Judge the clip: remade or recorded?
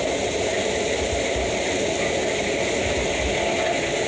recorded